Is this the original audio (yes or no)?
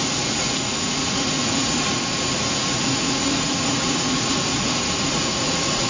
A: no